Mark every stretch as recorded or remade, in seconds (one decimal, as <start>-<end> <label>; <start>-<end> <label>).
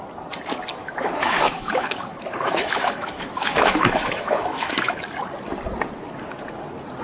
0.0-0.8 recorded; 0.8-5.0 remade; 5.0-7.0 recorded